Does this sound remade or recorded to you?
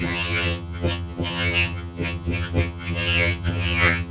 remade